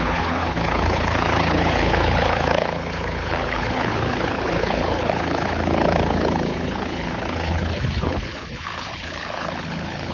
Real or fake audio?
fake